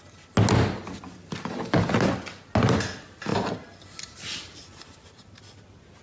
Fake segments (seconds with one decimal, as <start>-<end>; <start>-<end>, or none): none